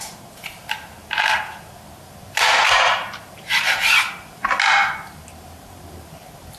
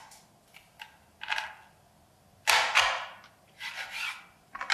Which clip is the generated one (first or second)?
first